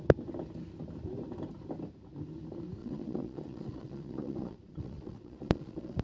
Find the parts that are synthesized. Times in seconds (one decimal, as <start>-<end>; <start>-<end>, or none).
2.8-6.0